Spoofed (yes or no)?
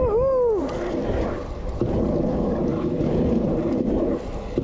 no